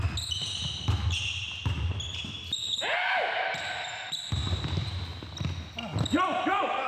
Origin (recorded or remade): recorded